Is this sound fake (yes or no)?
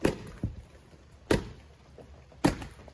no